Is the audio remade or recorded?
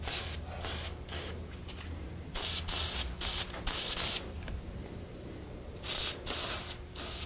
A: recorded